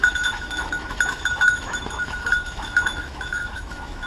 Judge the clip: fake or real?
fake